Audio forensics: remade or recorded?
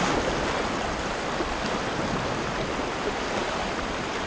recorded